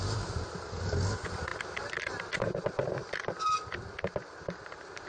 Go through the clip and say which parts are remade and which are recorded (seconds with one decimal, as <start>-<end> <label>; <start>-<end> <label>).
0.0-5.1 recorded